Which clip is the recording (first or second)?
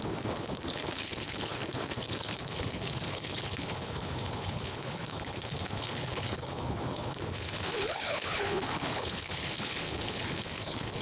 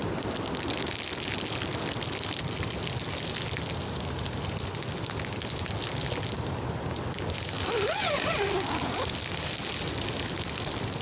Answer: second